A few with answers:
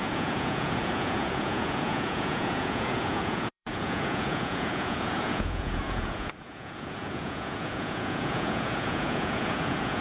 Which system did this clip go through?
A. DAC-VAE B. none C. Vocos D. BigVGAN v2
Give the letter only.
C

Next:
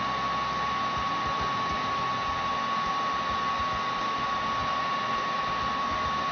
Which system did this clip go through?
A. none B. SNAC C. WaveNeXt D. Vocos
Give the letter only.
A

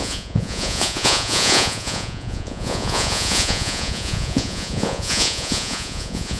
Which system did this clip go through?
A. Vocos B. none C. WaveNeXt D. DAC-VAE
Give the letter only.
A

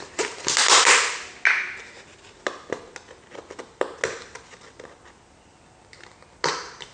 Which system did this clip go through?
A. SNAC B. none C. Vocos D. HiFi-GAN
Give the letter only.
B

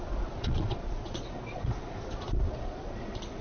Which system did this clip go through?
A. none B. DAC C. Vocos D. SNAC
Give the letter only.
C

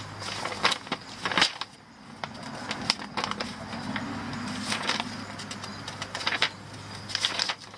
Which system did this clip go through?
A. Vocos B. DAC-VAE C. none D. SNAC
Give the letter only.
C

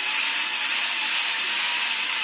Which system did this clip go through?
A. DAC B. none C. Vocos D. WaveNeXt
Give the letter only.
B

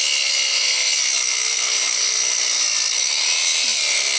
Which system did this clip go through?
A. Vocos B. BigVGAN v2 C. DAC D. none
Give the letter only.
D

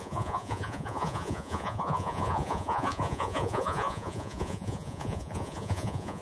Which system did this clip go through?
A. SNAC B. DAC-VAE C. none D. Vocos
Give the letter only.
D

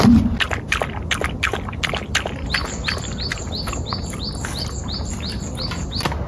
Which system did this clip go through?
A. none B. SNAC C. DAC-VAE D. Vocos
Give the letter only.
A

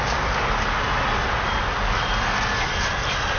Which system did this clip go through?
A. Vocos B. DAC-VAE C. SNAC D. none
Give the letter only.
D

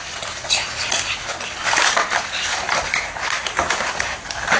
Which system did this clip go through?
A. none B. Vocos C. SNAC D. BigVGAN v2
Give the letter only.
A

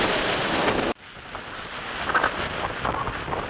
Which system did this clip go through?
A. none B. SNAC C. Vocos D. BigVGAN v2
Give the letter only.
A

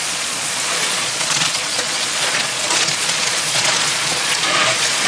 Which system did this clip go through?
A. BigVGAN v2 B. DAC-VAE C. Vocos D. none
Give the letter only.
C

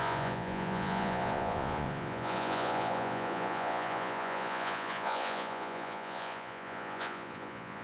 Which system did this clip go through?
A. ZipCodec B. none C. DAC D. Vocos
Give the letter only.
D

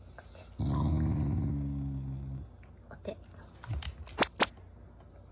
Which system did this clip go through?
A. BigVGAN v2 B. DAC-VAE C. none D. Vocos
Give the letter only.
C